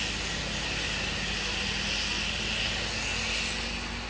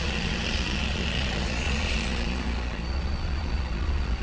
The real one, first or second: first